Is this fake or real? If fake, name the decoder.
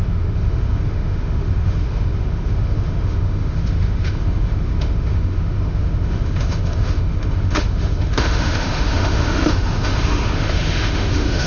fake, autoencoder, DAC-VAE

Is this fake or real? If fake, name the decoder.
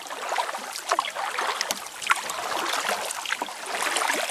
real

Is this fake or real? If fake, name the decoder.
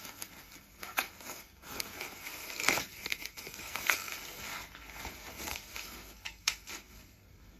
fake, codec, SNAC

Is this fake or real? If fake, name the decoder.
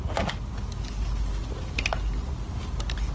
real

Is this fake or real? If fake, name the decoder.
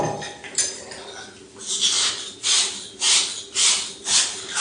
real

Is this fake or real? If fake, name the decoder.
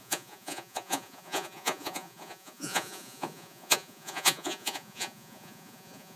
fake, vocoder, Vocos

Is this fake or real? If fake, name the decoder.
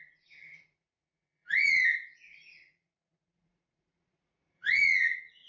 fake, vocoder, Vocos